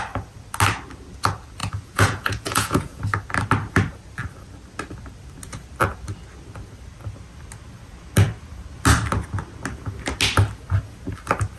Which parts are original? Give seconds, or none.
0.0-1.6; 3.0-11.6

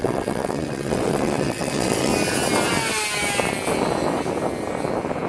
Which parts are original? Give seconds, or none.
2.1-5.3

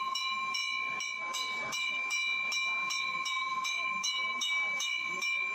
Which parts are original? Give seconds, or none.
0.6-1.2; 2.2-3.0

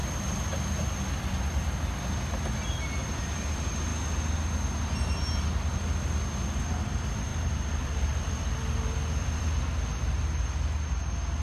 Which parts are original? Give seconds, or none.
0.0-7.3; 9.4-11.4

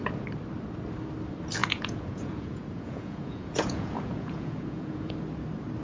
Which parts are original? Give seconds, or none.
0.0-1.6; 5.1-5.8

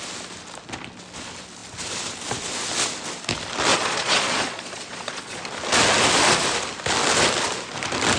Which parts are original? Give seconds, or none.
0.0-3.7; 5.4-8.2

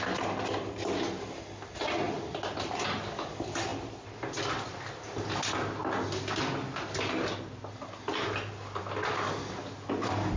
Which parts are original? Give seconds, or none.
0.0-10.4

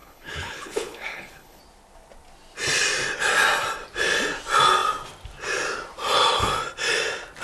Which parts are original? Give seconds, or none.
1.6-7.4